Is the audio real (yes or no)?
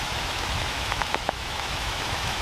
no